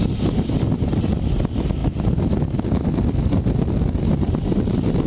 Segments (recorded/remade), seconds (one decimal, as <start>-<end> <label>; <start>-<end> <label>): 0.0-5.1 recorded